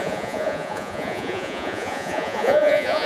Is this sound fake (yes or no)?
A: yes